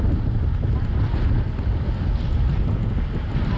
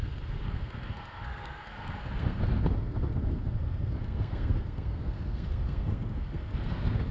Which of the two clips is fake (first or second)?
second